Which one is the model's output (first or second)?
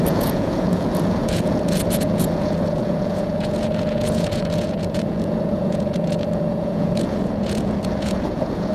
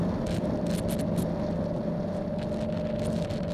first